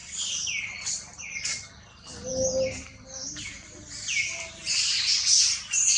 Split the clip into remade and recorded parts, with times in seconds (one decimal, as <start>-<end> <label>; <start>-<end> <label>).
0.0-6.0 recorded